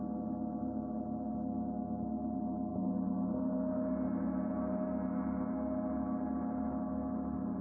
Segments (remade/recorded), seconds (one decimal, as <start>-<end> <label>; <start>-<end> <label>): 0.0-7.6 recorded